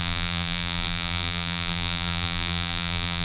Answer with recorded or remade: remade